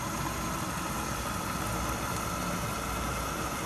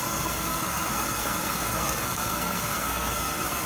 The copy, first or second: second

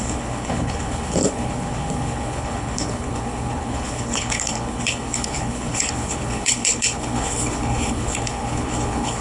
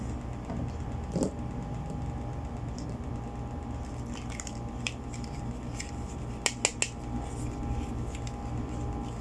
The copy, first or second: first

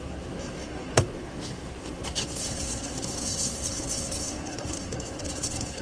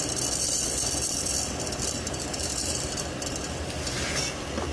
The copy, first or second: first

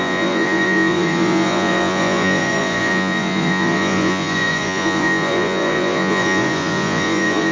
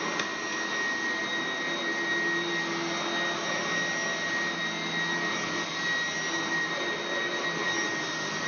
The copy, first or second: first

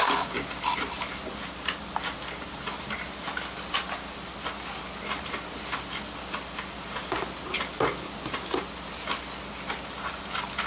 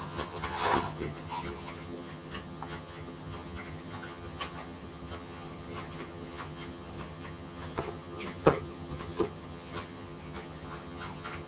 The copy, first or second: second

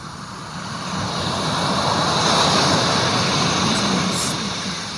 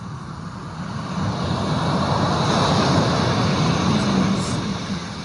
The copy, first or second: first